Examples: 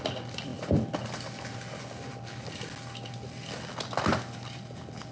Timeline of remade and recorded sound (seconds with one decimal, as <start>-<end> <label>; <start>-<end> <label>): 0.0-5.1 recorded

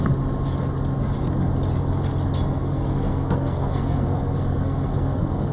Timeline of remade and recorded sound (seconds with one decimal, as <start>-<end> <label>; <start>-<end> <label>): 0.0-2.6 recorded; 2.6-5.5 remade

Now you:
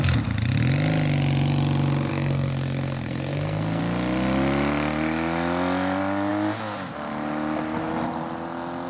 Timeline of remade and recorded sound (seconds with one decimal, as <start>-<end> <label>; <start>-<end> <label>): 0.0-2.1 recorded; 2.1-3.8 remade; 3.8-8.9 recorded

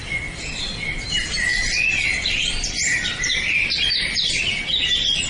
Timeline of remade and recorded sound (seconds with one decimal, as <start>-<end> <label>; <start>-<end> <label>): 0.0-5.3 recorded

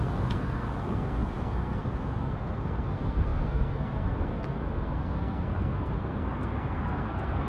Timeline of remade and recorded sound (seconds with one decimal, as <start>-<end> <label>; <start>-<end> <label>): 0.0-7.5 remade

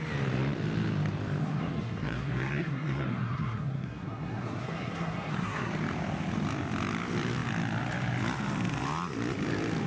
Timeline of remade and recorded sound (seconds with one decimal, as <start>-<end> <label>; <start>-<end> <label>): 0.0-1.4 recorded; 1.4-5.7 remade; 5.7-9.9 recorded

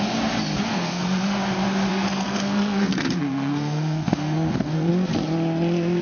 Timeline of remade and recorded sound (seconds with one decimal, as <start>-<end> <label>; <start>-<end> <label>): 0.0-0.7 recorded; 0.7-1.2 remade; 1.2-1.9 recorded; 1.9-4.9 remade; 4.9-6.0 recorded

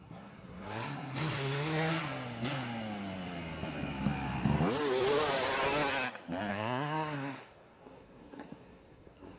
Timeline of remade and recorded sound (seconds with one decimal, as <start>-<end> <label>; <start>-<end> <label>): 0.0-1.9 remade; 1.9-6.5 recorded; 6.5-9.4 remade